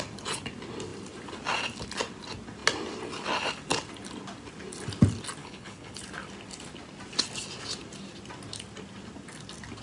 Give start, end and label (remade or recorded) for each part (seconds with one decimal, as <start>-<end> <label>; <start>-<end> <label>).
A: 0.0-5.4 recorded; 5.4-6.0 remade; 6.0-9.8 recorded